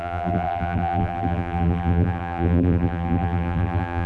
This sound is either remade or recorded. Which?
remade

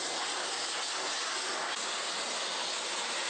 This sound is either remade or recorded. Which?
recorded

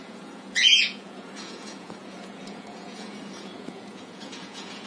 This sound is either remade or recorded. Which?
remade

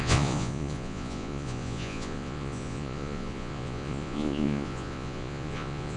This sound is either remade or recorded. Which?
remade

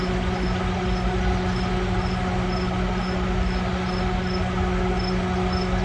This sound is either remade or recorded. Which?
recorded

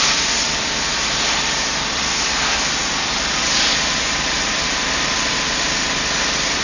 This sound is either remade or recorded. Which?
remade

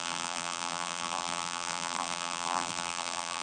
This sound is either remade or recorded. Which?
remade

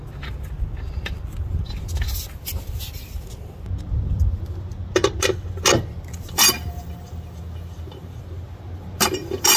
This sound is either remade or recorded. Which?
recorded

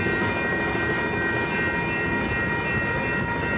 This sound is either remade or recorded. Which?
recorded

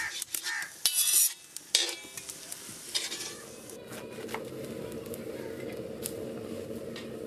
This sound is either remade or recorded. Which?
recorded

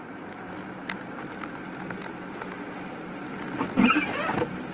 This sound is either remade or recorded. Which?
recorded